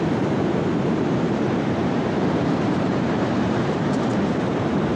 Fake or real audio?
fake